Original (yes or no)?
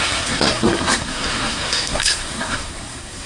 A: no